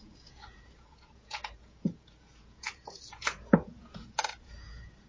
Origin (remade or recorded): remade